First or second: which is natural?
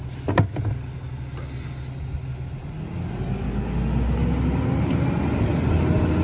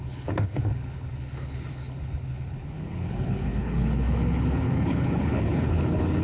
first